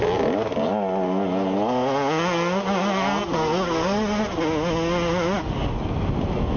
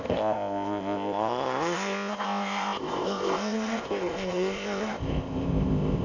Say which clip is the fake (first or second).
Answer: second